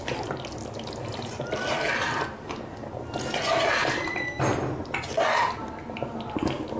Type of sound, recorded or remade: recorded